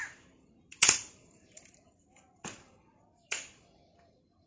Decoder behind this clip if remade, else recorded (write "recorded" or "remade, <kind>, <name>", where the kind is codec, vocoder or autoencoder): remade, vocoder, BigVGAN v2